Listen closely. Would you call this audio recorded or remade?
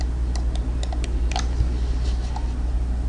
recorded